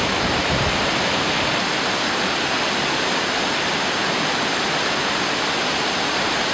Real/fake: real